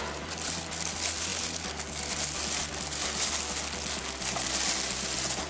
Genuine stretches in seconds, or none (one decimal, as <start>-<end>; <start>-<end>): 0.0-5.5